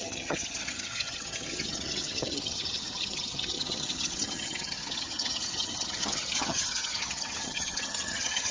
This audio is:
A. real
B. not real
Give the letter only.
B